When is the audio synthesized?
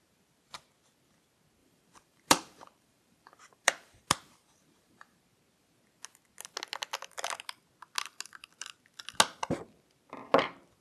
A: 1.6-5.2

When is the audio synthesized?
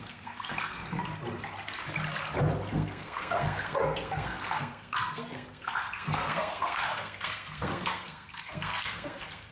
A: 0.0-1.0; 2.7-9.5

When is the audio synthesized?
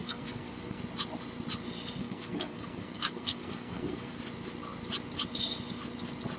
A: 0.0-0.8; 2.0-4.2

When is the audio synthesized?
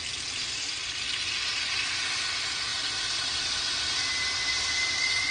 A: none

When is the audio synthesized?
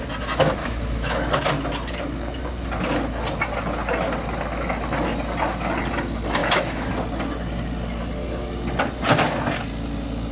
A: 0.6-1.4; 6.4-6.9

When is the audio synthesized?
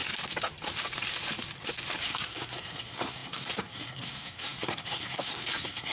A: 2.0-5.9